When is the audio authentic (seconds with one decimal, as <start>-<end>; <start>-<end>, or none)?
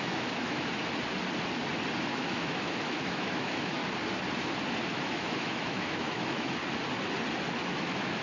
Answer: 0.8-2.1; 3.8-4.9; 6.6-7.5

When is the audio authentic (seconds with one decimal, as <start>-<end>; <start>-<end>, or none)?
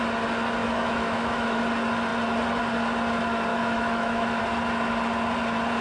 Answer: 0.0-0.6; 1.6-3.5; 4.4-5.8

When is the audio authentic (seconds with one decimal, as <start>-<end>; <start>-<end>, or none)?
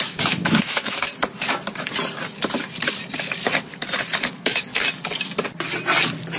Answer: 1.1-4.3; 4.7-6.4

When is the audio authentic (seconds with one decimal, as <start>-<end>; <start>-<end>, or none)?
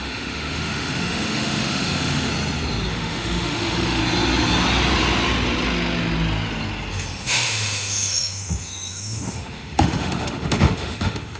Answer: 2.3-2.9; 4.0-6.9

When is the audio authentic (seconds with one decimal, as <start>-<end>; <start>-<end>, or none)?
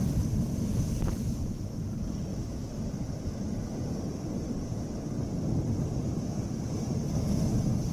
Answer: 0.0-2.3; 2.8-7.9